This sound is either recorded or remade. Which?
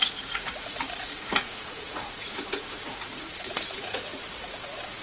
remade